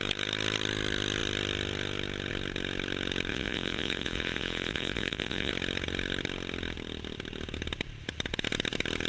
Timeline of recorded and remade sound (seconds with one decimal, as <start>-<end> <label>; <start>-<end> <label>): 0.0-3.3 recorded; 3.3-5.5 remade; 5.5-9.1 recorded